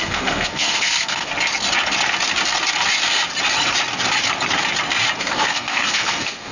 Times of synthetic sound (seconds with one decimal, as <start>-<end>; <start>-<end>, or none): 0.0-1.3; 5.2-6.5

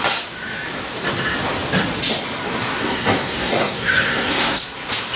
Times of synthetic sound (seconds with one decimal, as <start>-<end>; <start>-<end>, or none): 2.8-4.6